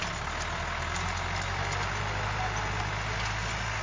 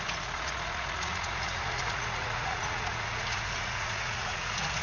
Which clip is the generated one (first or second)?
second